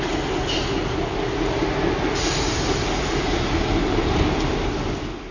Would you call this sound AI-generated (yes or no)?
no